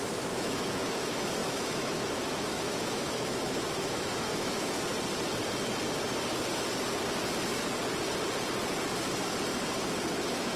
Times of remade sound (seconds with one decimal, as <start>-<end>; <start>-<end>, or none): 0.0-4.9; 10.1-10.6